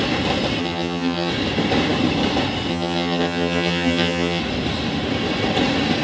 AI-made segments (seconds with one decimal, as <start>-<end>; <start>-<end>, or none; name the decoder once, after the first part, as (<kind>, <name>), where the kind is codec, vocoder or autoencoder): 0.6-1.3 (vocoder, HiFi-GAN); 2.7-4.4